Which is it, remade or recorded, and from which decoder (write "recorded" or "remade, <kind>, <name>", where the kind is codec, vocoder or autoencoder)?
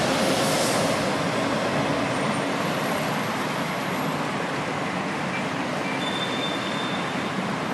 recorded